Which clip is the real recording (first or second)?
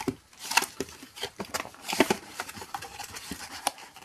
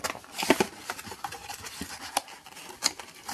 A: second